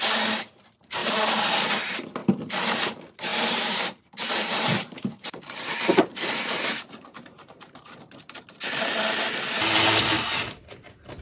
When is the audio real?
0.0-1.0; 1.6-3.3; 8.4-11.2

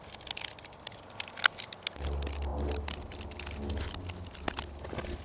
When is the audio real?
0.0-5.2

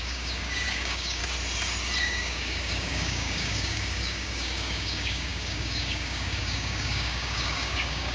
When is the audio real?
1.2-2.0